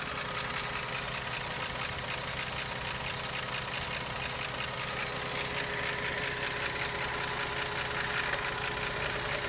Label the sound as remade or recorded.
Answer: recorded